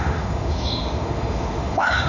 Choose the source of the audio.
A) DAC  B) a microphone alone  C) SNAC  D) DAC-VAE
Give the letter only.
D